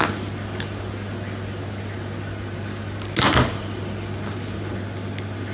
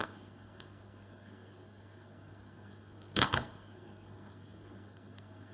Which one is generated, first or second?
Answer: second